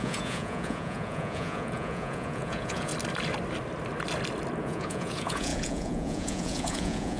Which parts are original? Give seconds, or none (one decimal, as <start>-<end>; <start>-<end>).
2.9-4.6